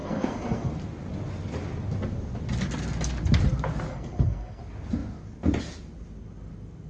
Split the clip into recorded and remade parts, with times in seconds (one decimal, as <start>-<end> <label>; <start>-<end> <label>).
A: 0.0-0.7 remade; 0.7-3.9 recorded; 3.9-4.6 remade; 4.6-6.9 recorded